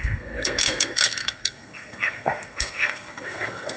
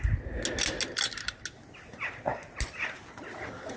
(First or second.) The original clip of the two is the second